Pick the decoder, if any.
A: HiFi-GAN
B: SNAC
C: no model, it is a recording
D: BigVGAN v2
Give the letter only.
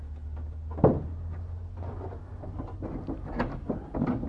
C